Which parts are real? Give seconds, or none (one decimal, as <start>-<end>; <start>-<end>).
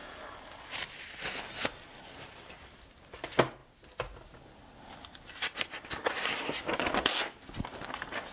0.0-8.3